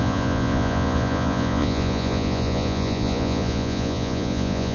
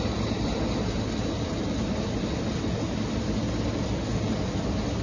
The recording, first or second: second